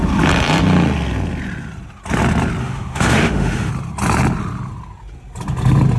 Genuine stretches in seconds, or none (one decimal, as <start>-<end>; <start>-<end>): 0.0-2.6; 3.7-6.0